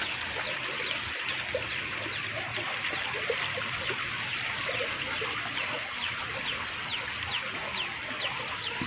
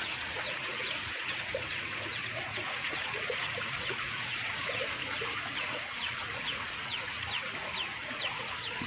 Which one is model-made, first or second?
second